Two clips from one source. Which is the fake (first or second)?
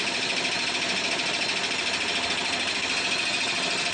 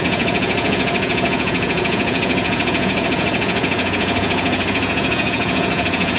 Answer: second